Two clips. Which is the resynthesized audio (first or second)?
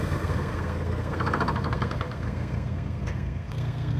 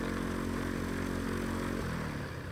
first